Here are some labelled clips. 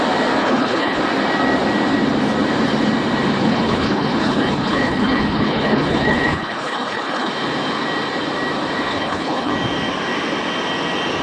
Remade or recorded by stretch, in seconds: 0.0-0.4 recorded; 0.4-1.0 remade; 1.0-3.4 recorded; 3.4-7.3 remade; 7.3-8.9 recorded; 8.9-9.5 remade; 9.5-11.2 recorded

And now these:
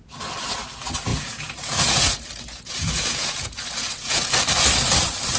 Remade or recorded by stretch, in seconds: 0.0-1.1 recorded; 1.1-4.3 remade; 4.3-5.4 recorded

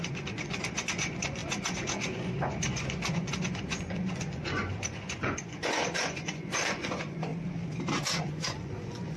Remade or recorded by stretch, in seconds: 0.0-7.3 remade; 7.3-8.2 recorded; 8.2-9.2 remade

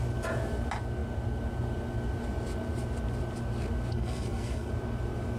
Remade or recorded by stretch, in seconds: 0.0-3.9 recorded; 3.9-4.7 remade; 4.7-5.4 recorded

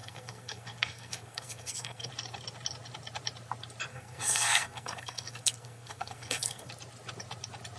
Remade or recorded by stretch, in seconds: 0.0-2.1 remade; 2.1-3.9 recorded; 3.9-6.7 remade; 6.7-7.8 recorded

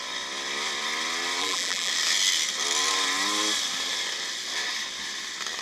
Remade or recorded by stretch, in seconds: 0.0-1.4 recorded; 1.4-1.9 remade; 1.9-5.6 recorded

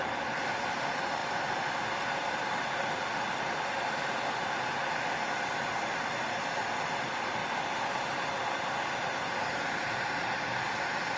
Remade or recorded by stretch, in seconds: 0.0-11.2 recorded

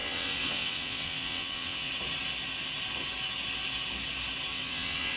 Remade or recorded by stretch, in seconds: 0.0-1.9 remade; 1.9-4.5 recorded; 4.5-5.2 remade